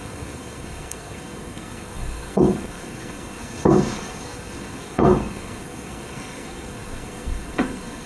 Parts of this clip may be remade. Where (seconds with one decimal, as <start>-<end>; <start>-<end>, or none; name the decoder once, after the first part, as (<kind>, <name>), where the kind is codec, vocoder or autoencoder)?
0.0-8.1 (codec, SNAC)